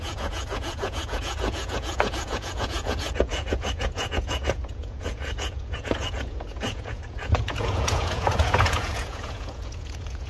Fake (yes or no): yes